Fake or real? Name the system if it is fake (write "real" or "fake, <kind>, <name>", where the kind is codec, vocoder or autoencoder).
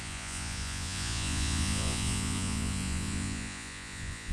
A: fake, vocoder, Vocos